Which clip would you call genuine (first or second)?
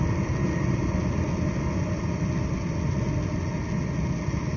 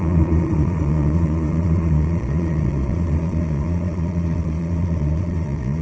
first